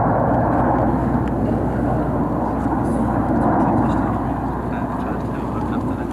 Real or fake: real